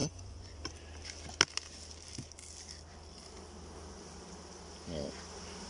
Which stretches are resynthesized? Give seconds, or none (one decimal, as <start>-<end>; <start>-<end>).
0.0-0.6